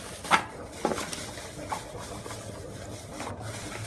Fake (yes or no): no